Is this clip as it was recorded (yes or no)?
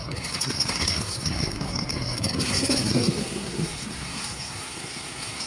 no